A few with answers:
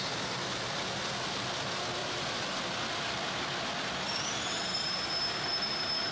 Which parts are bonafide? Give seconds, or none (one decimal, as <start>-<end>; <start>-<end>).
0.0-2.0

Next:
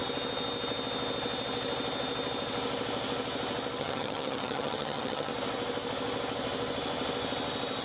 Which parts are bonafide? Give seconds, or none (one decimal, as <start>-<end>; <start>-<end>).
0.0-3.8; 5.3-7.8

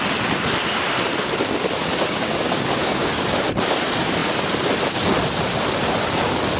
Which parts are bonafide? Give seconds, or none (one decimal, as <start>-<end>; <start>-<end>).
0.0-1.9; 3.2-6.6

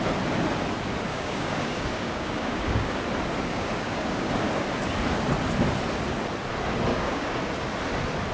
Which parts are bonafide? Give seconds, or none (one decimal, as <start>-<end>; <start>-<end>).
0.0-1.1; 2.9-3.5; 4.3-6.9; 7.4-8.3